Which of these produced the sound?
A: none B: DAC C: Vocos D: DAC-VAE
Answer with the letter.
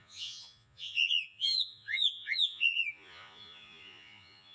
C